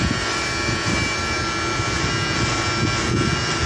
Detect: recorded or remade recorded